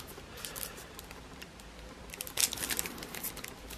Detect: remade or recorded recorded